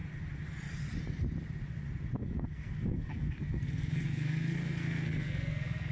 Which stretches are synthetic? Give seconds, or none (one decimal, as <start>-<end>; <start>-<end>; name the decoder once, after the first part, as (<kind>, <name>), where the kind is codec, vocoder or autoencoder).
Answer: 2.2-5.9 (codec, SNAC)